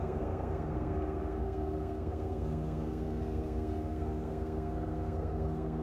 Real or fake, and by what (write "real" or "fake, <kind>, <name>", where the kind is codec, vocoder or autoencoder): fake, codec, SNAC